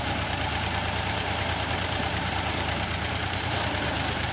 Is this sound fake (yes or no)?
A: yes